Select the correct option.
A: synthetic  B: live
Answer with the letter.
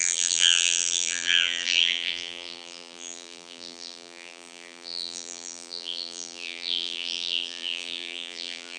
A